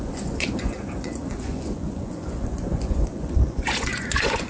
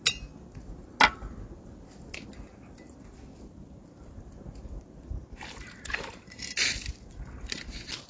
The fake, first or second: first